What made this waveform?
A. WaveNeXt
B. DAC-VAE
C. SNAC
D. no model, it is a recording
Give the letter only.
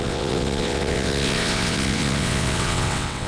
A